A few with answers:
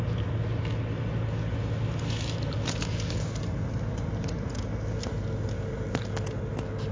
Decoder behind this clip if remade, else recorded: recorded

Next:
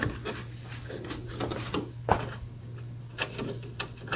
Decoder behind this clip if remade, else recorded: recorded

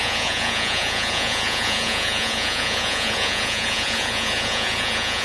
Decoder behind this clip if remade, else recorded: remade, vocoder, Vocos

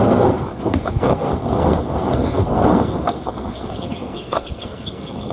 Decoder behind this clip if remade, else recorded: remade, codec, SNAC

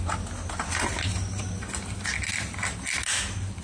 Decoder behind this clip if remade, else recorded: recorded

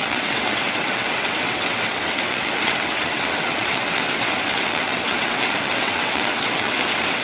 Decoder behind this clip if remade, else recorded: remade, vocoder, WaveNeXt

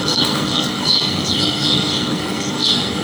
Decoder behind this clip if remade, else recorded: remade, codec, SNAC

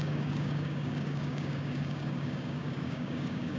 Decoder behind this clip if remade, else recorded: remade, codec, DAC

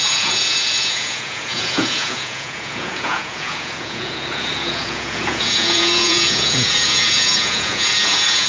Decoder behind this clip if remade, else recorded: remade, vocoder, Vocos